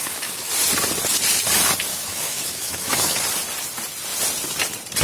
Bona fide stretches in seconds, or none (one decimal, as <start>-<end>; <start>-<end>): 0.5-1.9; 3.2-5.0